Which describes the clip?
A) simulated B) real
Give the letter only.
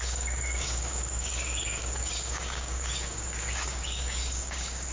A